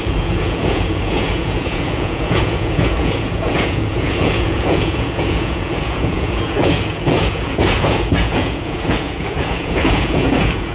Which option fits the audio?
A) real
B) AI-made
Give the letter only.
B